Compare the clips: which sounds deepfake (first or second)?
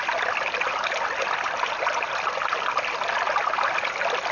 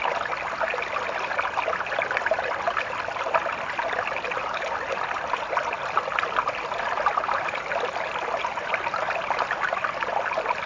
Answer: second